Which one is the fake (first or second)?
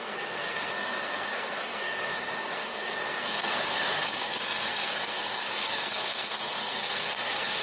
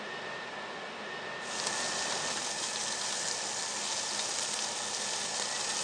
first